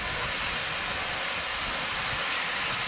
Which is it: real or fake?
real